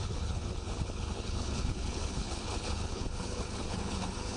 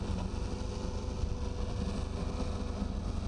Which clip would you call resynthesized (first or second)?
first